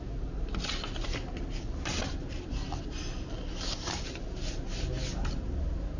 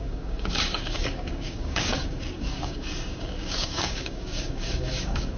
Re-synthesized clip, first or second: second